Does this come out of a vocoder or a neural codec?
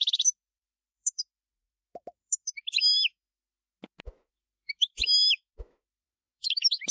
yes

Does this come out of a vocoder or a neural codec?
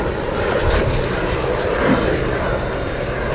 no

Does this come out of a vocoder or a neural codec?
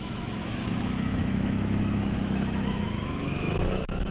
yes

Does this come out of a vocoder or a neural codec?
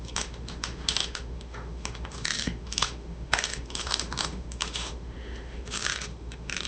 yes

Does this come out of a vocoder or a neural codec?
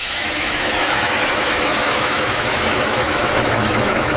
yes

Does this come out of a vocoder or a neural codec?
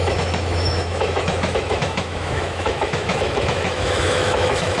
yes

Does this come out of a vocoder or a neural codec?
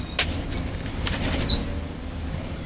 no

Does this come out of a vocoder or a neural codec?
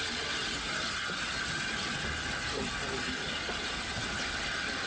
no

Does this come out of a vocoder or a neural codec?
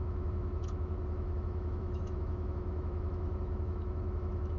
yes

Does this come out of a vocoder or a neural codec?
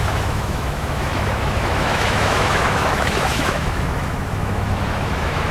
yes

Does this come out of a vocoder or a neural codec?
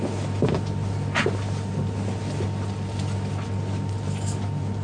no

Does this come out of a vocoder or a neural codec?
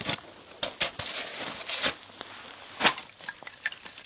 no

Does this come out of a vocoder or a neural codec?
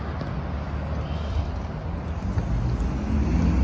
no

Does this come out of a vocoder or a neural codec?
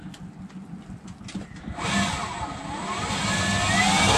no